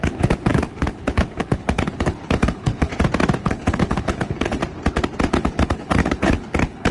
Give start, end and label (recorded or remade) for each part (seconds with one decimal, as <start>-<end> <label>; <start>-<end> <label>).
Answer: 0.0-2.9 remade; 2.9-3.4 recorded; 3.4-4.6 remade; 4.6-5.3 recorded; 5.3-6.9 remade